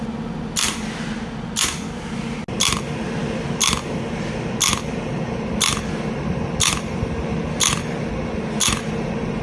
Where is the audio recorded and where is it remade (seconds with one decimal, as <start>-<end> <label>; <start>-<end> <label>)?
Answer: 0.0-9.4 recorded